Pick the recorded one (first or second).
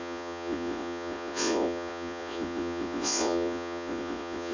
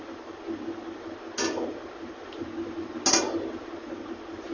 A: second